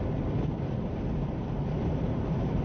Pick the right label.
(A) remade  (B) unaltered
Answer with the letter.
B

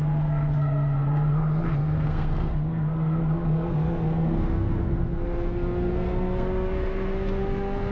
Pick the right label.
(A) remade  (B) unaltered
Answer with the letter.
A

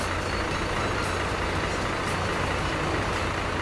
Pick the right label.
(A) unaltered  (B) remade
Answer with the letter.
A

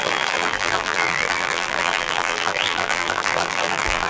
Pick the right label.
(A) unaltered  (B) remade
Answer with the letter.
B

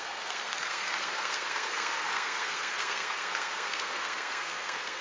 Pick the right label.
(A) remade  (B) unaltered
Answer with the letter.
A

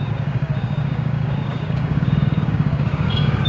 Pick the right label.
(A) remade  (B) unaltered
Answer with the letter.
A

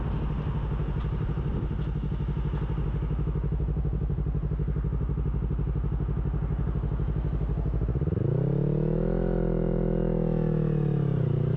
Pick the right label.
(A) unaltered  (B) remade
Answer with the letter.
A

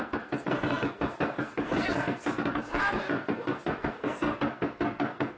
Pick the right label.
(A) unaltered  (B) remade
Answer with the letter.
B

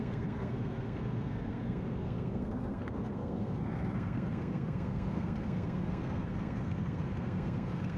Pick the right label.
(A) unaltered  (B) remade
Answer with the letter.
B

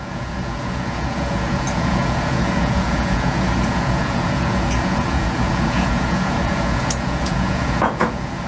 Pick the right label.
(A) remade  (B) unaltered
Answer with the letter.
A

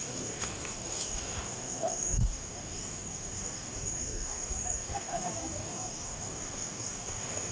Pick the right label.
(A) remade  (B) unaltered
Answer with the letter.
A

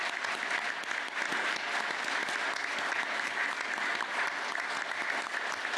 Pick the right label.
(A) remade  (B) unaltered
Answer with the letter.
B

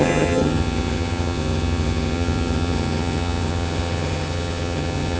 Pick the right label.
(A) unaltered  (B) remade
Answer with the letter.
B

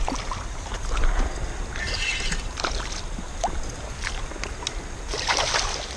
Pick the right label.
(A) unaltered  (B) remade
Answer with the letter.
A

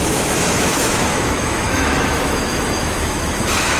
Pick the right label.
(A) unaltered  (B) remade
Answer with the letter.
B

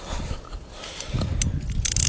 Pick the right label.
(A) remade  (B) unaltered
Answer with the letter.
B